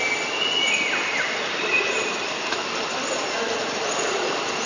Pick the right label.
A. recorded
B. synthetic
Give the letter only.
A